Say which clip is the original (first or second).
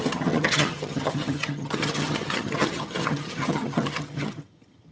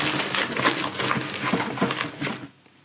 second